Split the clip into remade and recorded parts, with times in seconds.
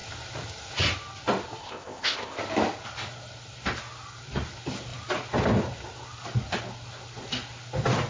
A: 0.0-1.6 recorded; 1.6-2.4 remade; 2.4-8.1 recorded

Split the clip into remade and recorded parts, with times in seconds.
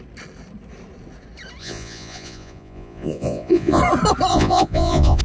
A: 0.0-1.6 recorded; 1.6-3.8 remade; 3.8-4.3 recorded; 4.3-5.2 remade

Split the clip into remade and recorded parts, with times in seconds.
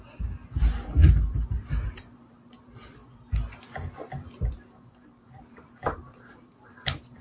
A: 0.0-7.2 remade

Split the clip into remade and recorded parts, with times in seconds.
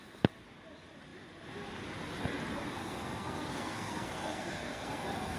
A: 0.0-2.8 recorded; 2.8-5.4 remade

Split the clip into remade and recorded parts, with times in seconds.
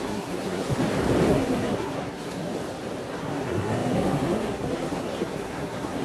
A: 0.0-0.8 remade; 0.8-1.3 recorded; 1.3-2.5 remade; 2.5-3.1 recorded; 3.1-6.0 remade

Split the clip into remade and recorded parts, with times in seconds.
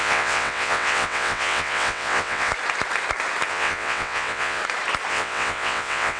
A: 0.0-2.5 remade; 2.5-3.5 recorded; 3.5-4.6 remade; 4.6-5.1 recorded; 5.1-6.2 remade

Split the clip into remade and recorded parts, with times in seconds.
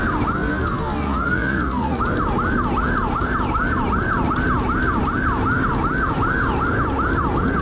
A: 0.0-1.0 recorded; 1.0-2.0 remade; 2.0-7.6 recorded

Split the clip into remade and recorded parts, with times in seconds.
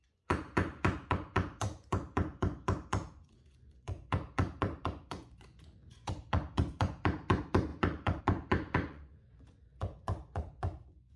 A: 0.0-11.2 remade